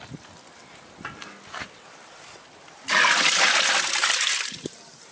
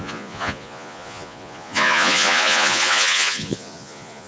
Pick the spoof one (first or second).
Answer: second